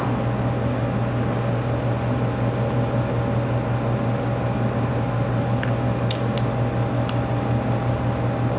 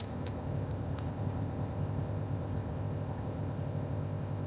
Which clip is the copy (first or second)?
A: second